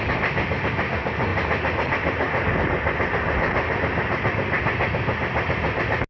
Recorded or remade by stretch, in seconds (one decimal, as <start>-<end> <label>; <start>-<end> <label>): 0.0-6.1 recorded